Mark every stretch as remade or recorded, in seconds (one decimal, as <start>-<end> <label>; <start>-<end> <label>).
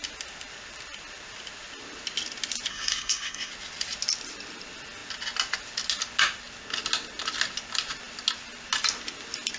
0.0-2.7 recorded; 2.7-3.5 remade; 3.5-9.6 recorded